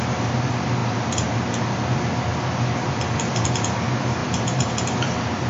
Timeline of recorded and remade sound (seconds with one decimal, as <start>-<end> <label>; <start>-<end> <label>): 0.0-0.8 recorded; 0.8-1.5 remade; 1.5-4.2 recorded; 4.2-4.7 remade; 4.7-5.5 recorded

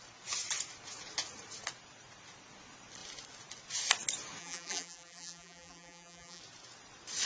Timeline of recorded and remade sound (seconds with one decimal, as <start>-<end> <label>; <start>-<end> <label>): 0.0-4.4 recorded; 4.4-6.4 remade; 6.4-7.3 recorded

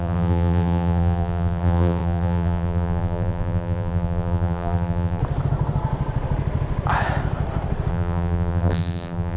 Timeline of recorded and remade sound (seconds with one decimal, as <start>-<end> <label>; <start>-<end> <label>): 0.0-5.2 remade; 5.2-7.9 recorded; 7.9-9.4 remade

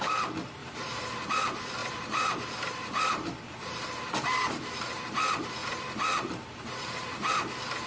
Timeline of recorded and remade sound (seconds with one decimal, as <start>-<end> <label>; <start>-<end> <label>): 0.0-0.6 recorded; 0.6-1.3 remade; 1.3-1.8 recorded; 1.8-5.0 remade; 5.0-5.6 recorded; 5.6-7.3 remade; 7.3-7.9 recorded

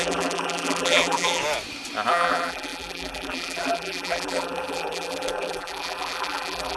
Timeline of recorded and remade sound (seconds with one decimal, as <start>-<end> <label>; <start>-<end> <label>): 0.0-1.4 remade; 1.4-2.1 recorded; 2.1-6.8 remade

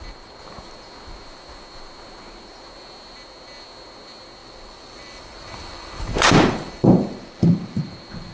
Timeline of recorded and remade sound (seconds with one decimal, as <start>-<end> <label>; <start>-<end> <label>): 0.0-4.4 recorded; 4.4-7.8 remade; 7.8-8.3 recorded

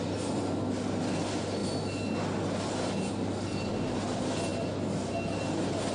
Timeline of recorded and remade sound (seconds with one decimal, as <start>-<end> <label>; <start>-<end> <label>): 0.0-5.9 recorded